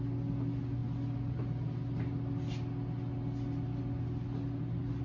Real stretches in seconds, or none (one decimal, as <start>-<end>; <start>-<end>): 0.0-5.0